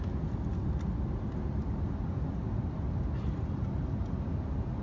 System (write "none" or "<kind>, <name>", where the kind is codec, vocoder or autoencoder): none